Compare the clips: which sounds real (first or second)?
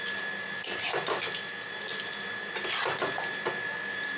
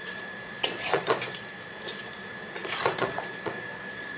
first